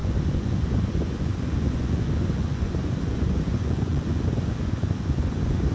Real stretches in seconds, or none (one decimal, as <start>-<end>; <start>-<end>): none